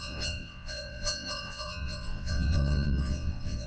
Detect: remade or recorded remade